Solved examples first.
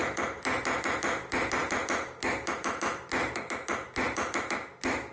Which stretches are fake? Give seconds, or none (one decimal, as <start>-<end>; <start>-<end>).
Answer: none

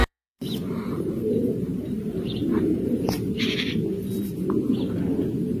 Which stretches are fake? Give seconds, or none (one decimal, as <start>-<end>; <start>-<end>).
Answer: 0.0-3.4

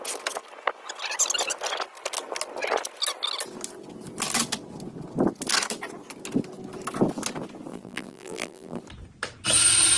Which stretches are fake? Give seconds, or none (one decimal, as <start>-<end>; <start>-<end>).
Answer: 7.7-8.8